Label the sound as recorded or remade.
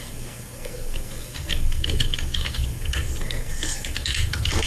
remade